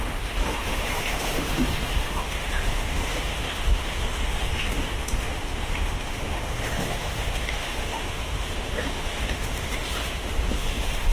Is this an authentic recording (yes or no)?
no